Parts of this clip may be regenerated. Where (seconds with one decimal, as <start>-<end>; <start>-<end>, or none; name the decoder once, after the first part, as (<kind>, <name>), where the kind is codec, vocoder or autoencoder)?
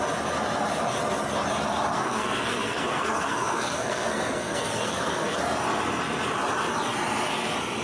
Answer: 1.9-5.4 (codec, SNAC)